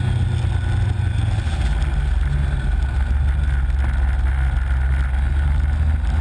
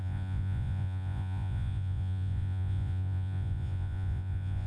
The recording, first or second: first